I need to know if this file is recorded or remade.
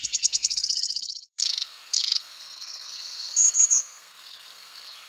remade